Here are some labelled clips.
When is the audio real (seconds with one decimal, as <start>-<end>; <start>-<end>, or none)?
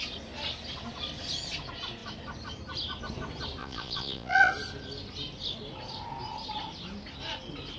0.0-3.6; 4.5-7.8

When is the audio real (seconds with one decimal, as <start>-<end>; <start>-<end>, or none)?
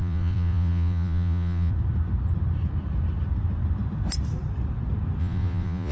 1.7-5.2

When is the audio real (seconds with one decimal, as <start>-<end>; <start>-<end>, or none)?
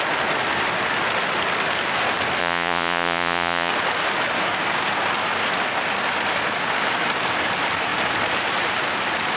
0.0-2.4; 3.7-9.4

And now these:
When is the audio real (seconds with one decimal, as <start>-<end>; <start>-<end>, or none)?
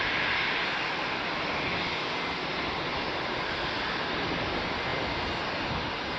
0.0-6.2